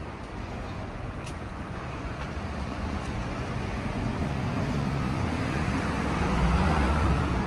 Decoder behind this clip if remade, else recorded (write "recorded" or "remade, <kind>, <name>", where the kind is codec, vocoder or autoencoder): remade, vocoder, Vocos